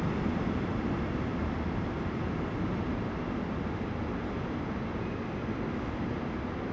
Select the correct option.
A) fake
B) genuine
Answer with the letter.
B